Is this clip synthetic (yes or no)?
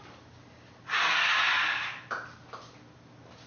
no